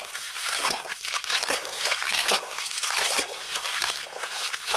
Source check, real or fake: fake